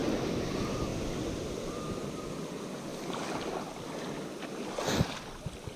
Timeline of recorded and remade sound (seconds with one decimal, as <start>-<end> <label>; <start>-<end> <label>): 0.0-5.8 recorded